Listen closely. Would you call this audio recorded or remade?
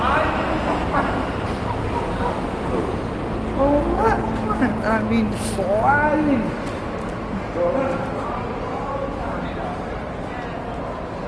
recorded